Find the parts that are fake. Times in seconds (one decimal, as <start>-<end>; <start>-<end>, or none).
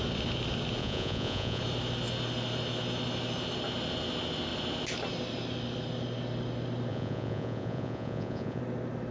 0.8-1.6; 6.9-8.6